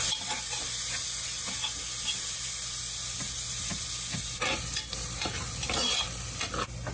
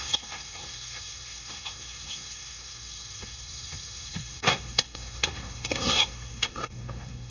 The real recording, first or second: first